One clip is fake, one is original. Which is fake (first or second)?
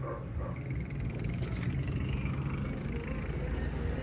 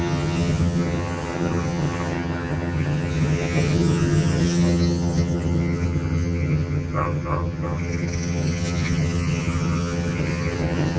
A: second